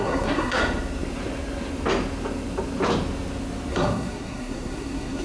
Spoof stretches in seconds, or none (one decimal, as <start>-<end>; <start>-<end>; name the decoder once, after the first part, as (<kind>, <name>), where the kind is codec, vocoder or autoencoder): 0.0-0.6 (codec, SNAC); 3.7-5.2